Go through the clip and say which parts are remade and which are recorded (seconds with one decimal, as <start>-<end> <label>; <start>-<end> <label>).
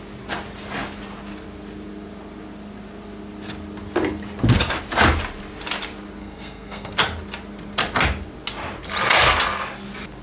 0.0-6.2 recorded; 6.2-6.9 remade; 6.9-10.2 recorded